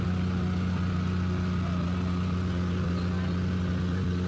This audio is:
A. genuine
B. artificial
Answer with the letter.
A